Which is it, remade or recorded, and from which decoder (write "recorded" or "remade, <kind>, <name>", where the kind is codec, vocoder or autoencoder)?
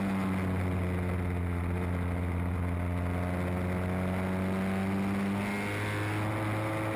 recorded